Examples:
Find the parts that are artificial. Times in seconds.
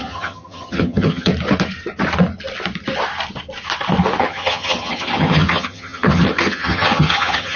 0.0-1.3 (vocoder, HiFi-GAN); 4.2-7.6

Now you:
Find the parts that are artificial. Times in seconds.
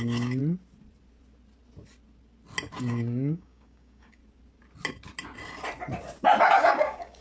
0.0-0.4 (codec, DAC); 2.8-4.2; 6.5-7.2